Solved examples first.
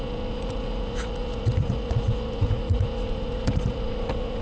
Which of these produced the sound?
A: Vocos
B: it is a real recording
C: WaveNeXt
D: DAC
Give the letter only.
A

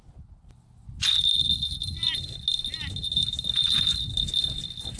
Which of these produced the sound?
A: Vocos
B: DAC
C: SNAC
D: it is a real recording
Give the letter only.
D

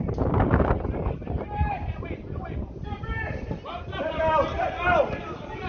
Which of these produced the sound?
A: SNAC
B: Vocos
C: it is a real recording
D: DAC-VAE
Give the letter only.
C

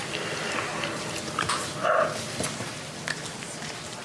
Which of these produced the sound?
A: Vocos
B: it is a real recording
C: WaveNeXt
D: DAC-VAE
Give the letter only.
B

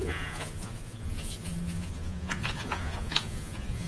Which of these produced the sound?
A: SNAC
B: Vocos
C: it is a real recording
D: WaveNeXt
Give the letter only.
B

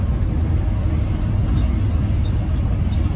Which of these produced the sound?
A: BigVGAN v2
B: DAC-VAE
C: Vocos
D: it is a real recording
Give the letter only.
D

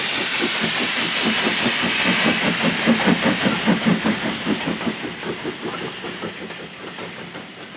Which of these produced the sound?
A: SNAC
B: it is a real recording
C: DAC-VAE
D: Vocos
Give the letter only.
B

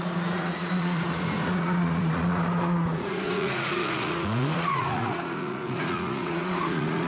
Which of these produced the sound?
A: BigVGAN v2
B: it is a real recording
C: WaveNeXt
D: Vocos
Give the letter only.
D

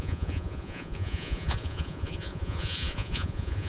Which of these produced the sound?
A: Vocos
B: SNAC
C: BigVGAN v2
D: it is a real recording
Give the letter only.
A